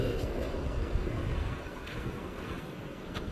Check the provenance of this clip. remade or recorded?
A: remade